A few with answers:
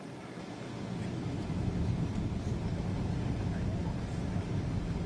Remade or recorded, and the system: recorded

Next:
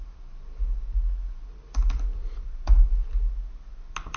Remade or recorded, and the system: recorded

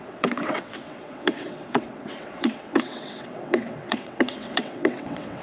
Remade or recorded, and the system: remade, vocoder, WaveNeXt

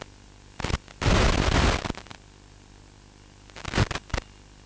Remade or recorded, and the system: recorded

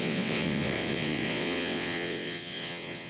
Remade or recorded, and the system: remade, vocoder, WaveNeXt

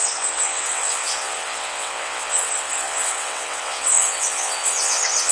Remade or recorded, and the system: remade, vocoder, WaveNeXt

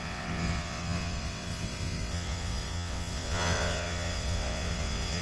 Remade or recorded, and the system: remade, vocoder, WaveNeXt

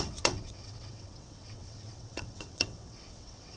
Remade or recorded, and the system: remade, vocoder, WaveNeXt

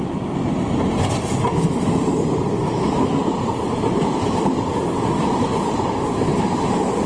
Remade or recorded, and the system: recorded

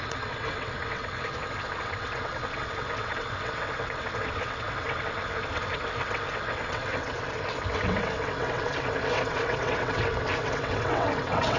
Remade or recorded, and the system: remade, vocoder, WaveNeXt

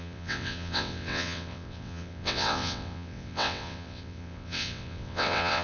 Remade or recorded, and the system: remade, vocoder, WaveNeXt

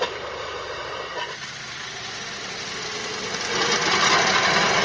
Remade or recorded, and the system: recorded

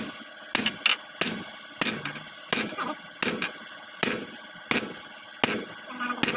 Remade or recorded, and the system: recorded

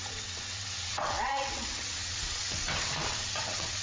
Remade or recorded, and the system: remade, vocoder, WaveNeXt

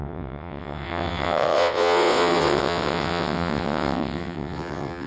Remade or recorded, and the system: remade, vocoder, WaveNeXt